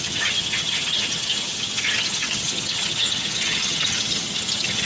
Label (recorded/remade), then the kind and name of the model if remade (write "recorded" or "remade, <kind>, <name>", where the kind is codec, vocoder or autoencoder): remade, vocoder, HiFi-GAN